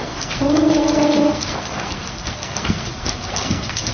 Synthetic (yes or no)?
yes